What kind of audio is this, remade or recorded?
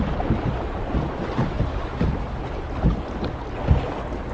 recorded